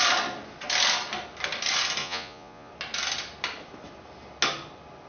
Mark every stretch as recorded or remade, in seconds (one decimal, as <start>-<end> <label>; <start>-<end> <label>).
0.0-2.0 recorded; 2.0-2.7 remade; 2.7-5.1 recorded